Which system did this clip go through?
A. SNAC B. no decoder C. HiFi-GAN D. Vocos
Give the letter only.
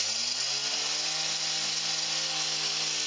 B